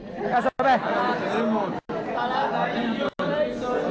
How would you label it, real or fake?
real